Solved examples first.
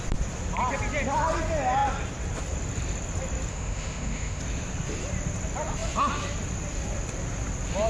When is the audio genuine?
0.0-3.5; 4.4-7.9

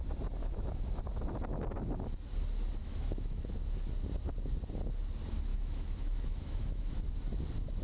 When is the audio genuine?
0.0-0.4; 1.0-2.8; 3.9-5.5; 6.9-7.8

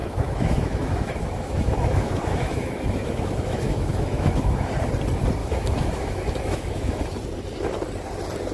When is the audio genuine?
4.7-5.4; 7.0-8.5

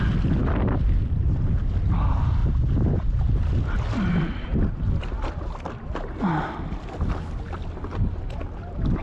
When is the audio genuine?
0.0-9.0